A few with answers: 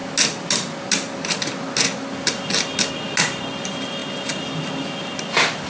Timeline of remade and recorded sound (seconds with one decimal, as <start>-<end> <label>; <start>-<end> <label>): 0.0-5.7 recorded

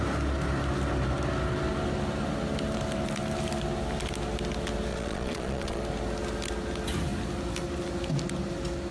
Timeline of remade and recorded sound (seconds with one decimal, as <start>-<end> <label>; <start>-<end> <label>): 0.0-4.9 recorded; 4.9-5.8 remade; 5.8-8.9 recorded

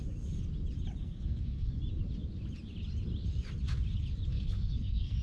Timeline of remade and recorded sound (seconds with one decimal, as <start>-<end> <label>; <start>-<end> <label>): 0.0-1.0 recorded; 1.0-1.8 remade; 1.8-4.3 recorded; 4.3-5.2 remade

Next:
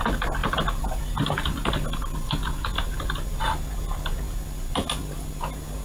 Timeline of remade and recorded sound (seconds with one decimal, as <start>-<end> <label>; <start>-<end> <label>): 0.0-5.8 recorded

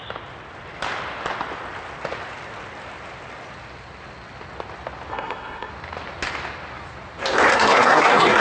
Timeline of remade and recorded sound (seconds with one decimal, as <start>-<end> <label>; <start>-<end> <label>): 0.0-5.1 recorded; 5.1-5.7 remade; 5.7-7.5 recorded; 7.5-8.4 remade

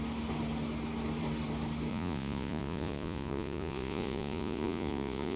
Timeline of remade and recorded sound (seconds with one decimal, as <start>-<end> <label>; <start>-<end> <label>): 0.0-1.9 recorded; 1.9-5.4 remade